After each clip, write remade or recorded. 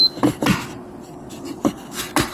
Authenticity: recorded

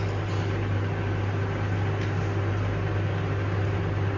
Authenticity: recorded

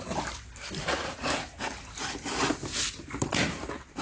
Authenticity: recorded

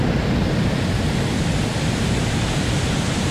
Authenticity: recorded